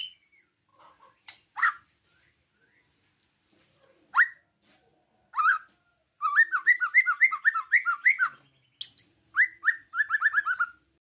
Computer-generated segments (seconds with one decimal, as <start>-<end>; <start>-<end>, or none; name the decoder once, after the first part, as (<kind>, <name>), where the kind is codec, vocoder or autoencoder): none